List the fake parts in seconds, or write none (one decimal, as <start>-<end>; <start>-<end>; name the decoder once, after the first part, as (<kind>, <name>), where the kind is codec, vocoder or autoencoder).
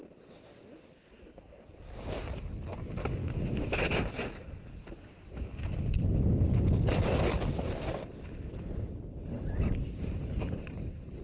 none